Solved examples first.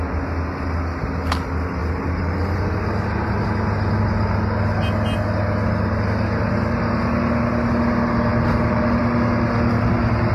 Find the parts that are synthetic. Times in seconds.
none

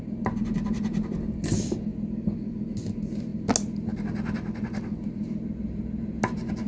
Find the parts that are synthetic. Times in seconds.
none